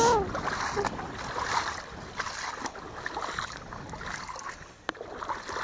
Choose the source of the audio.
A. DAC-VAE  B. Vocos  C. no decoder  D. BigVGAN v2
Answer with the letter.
C